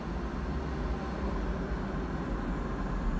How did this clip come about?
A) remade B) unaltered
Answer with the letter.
B